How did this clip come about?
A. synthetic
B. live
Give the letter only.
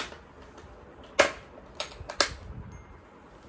B